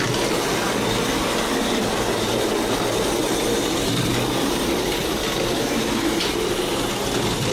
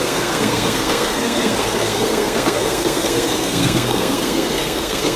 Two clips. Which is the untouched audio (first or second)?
first